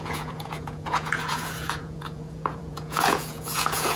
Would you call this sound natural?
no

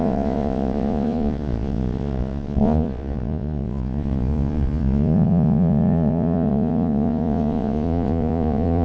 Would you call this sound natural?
no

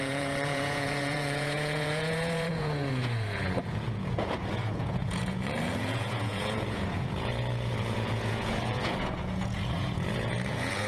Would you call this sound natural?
no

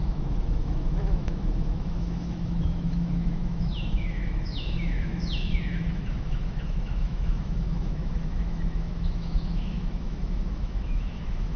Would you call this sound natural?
no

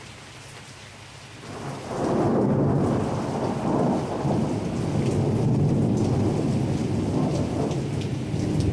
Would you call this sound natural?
yes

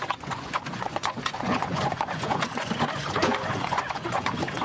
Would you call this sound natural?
no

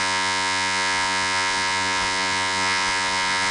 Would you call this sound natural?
no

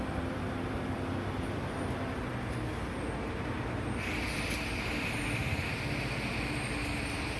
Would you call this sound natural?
yes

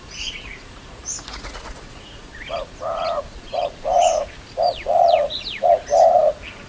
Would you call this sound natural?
no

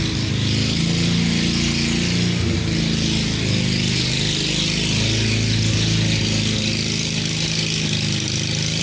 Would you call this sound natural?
yes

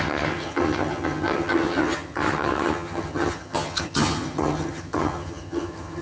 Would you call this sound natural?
no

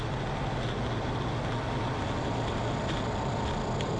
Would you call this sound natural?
yes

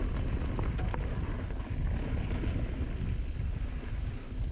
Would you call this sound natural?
yes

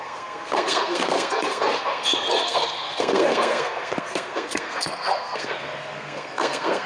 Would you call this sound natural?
no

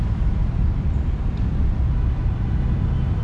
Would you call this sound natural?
yes